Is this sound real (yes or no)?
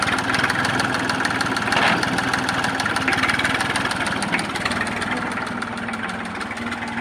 yes